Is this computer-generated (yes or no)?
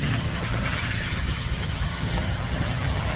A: yes